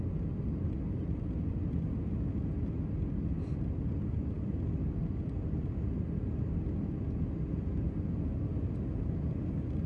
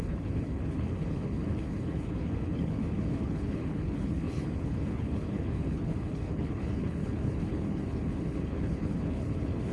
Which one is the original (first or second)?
first